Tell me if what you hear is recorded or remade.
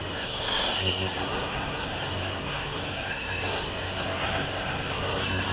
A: remade